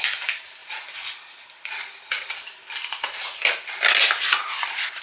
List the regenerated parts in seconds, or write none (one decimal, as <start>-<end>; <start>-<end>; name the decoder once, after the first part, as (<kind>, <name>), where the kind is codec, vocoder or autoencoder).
none